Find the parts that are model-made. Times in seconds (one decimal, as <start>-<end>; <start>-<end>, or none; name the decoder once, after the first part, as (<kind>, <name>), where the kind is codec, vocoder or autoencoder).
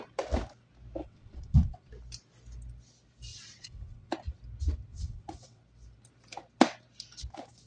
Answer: 1.0-1.9 (vocoder, WaveNeXt); 3.3-4.1; 4.9-5.6